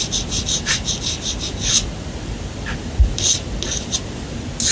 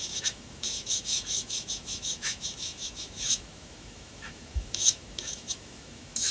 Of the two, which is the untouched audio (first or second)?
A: first